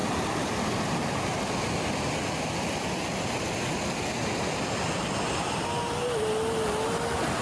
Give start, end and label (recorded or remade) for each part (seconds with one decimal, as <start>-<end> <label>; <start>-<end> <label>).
0.0-7.4 recorded